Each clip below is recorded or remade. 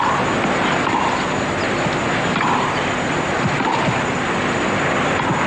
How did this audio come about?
recorded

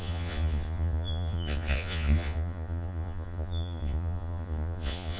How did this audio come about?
remade